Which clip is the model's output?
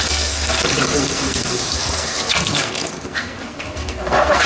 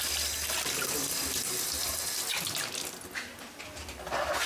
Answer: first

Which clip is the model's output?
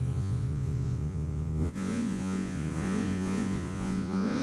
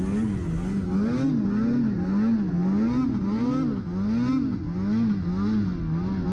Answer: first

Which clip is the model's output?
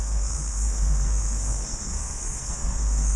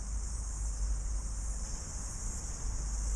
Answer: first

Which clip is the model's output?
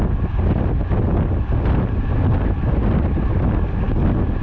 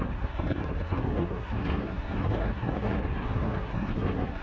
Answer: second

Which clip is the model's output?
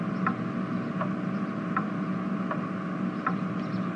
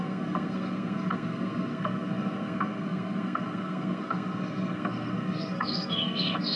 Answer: second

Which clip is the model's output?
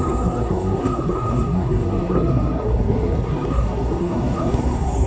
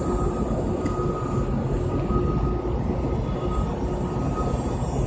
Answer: first